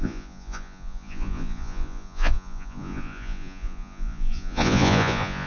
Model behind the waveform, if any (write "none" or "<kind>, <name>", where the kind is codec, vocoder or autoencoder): vocoder, Vocos